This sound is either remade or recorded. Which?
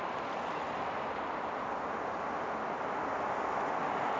recorded